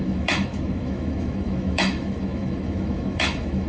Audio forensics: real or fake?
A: fake